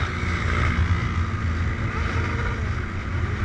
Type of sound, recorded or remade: recorded